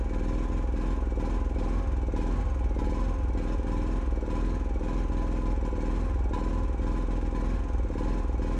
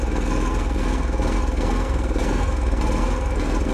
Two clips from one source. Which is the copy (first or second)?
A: second